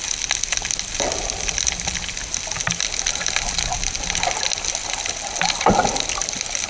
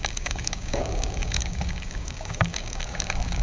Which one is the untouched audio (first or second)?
first